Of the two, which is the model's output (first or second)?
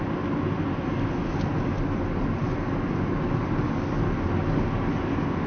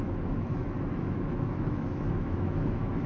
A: second